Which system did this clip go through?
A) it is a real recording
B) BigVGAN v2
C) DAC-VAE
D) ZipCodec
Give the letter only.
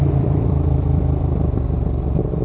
B